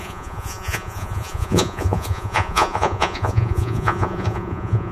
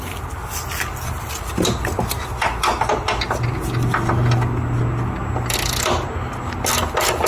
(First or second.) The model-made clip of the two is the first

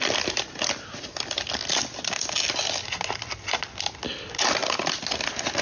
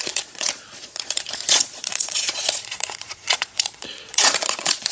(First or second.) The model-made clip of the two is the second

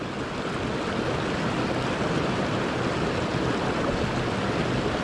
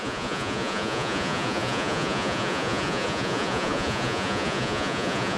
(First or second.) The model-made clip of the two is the second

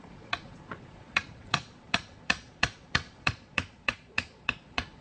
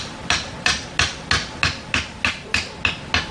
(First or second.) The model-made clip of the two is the first